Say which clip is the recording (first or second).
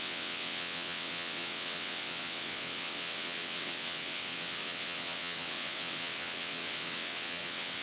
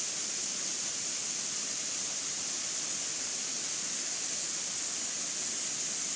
second